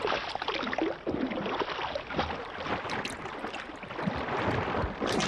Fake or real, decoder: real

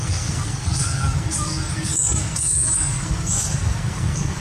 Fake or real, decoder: fake, codec, SNAC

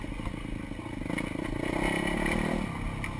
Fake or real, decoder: real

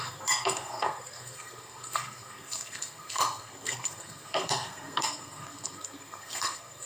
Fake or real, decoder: fake, codec, SNAC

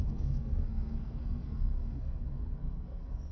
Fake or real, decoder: fake, codec, SNAC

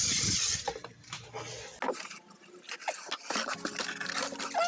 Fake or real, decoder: real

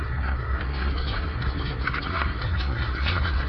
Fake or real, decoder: fake, codec, SNAC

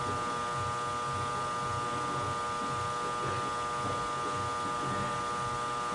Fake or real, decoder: real